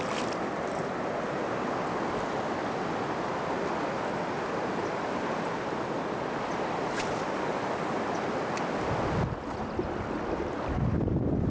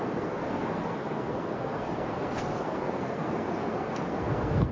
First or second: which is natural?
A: first